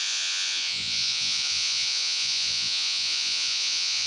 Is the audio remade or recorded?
remade